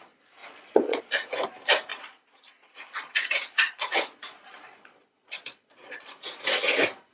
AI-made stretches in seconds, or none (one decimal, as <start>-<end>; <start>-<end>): 0.4-1.0; 1.9-6.2